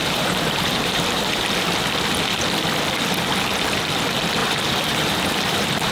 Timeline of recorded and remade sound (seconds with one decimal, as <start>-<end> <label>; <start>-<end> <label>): 0.0-1.4 remade; 1.4-4.4 recorded; 4.4-5.9 remade